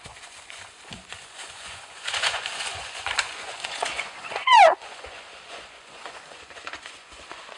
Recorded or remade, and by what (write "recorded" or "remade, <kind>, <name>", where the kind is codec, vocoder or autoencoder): remade, vocoder, Vocos